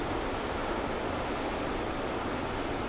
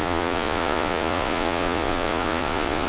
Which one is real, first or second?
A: first